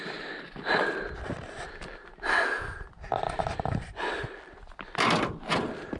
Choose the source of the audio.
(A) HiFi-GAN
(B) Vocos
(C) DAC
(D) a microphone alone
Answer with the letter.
D